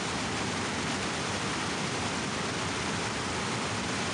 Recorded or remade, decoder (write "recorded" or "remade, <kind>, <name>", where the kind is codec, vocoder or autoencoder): recorded